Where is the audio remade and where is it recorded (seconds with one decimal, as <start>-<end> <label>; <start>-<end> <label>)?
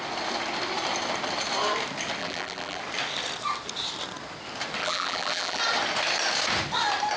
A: 0.0-2.2 recorded; 2.2-2.8 remade; 2.8-4.8 recorded; 4.8-5.6 remade; 5.6-7.2 recorded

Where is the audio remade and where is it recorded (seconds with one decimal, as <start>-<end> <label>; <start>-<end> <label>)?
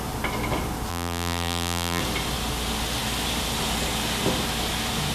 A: 0.0-0.9 recorded; 0.9-2.0 remade; 2.0-5.1 recorded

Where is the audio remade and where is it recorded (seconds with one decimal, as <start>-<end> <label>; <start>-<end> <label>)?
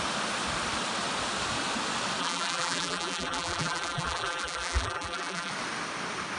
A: 0.0-2.2 recorded; 2.2-5.5 remade; 5.5-6.4 recorded